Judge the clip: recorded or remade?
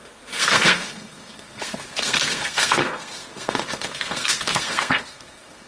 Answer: remade